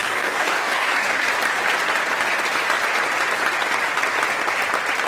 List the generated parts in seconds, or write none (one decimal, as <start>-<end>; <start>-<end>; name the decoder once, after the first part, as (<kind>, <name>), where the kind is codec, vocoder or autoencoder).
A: 0.0-1.3 (codec, DAC)